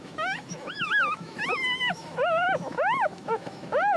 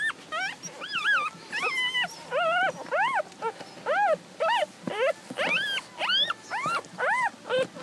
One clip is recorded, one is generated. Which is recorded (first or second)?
second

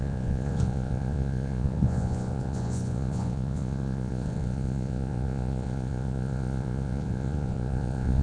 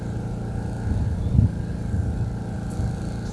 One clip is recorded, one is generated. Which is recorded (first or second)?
second